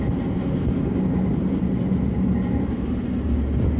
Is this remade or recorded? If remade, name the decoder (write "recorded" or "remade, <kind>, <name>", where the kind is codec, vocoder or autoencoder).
recorded